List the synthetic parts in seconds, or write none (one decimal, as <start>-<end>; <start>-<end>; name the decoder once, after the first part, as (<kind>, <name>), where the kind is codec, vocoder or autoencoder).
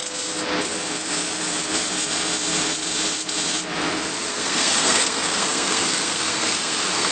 4.3-7.1 (codec, SNAC)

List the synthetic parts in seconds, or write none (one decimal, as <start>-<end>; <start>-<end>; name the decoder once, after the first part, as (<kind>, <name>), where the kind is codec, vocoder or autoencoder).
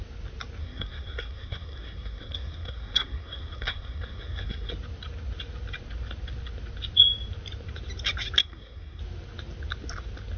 0.6-4.7 (codec, SNAC); 8.4-9.0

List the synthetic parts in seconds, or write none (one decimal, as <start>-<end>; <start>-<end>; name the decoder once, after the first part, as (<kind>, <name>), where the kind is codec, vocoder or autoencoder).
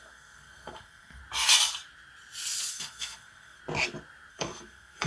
0.0-1.2 (codec, SNAC); 2.7-3.6; 4.3-5.1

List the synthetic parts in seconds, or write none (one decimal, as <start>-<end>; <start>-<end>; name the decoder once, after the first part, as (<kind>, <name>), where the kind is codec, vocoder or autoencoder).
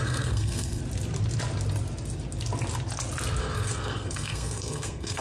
0.0-0.8 (codec, SNAC); 3.4-5.2